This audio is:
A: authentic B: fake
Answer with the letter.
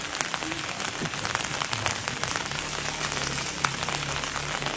A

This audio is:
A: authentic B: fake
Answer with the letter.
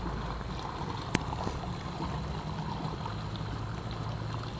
A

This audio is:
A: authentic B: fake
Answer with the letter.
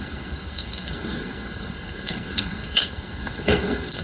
B